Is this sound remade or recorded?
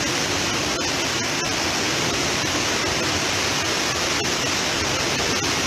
recorded